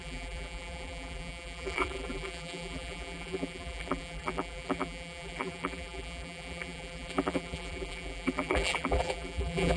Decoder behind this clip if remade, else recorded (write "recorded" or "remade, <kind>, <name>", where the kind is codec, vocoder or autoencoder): remade, vocoder, BigVGAN v2